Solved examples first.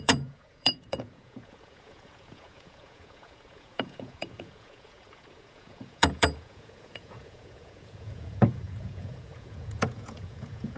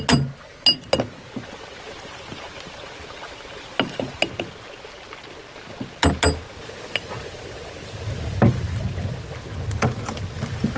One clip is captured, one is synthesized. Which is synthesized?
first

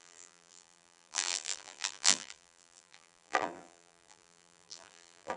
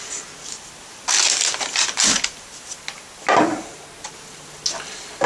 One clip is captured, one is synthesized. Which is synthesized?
first